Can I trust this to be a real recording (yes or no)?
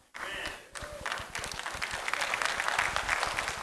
yes